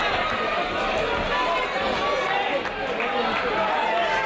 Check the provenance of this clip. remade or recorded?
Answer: recorded